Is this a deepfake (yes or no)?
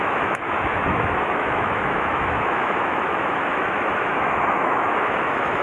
yes